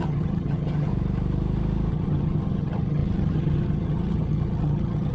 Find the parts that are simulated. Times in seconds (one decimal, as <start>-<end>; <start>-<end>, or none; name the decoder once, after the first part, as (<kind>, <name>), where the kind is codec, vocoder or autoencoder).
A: 0.0-0.9 (vocoder, HiFi-GAN); 1.9-5.1